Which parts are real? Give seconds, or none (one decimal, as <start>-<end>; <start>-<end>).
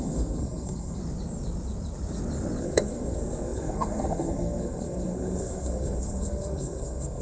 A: 1.0-2.6